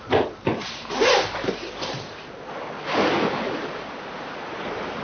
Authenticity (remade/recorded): recorded